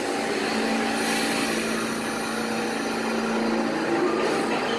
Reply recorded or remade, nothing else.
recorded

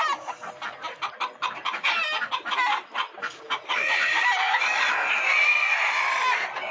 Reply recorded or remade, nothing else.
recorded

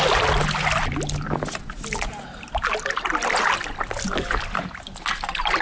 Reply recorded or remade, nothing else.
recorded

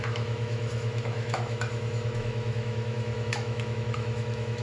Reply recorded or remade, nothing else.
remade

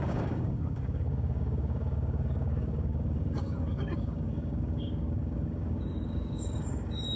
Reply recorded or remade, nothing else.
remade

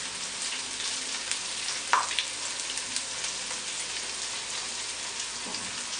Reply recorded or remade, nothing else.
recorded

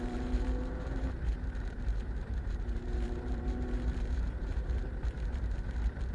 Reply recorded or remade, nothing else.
remade